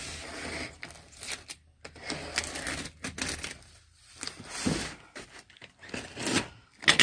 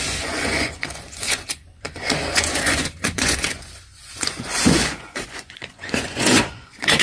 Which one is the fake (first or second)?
second